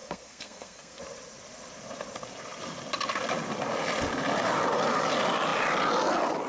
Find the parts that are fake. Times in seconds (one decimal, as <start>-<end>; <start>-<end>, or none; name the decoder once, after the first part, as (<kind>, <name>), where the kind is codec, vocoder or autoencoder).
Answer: 0.0-1.0 (codec, SNAC)